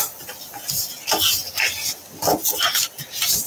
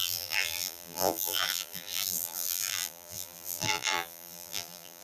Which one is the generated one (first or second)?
second